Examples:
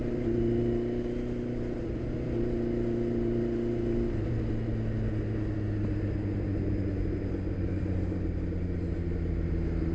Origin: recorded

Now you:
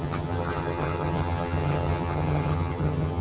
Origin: remade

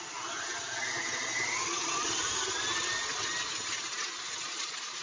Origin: recorded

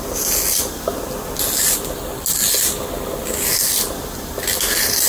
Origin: recorded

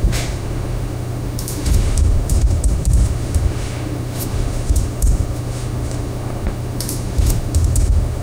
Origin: remade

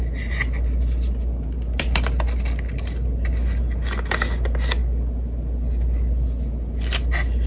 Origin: recorded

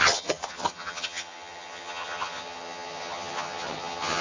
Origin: remade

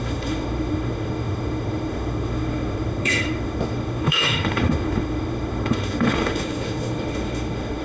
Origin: remade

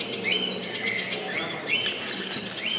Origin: recorded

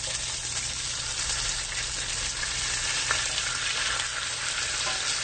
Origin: recorded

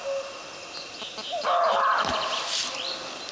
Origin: recorded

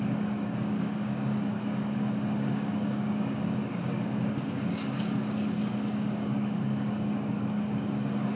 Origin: remade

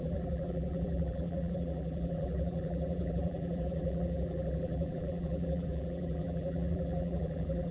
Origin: remade